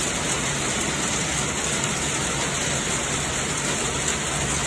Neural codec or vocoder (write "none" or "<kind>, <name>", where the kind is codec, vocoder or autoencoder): none